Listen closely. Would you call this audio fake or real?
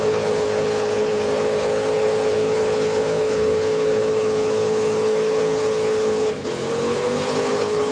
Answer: fake